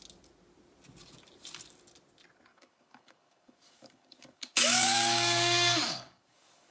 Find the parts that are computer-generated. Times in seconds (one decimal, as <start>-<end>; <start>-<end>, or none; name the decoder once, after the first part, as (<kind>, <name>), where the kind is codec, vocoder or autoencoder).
2.5-6.7 (codec, DAC)